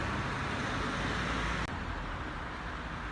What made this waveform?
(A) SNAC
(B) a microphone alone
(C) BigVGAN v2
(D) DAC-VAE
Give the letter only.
B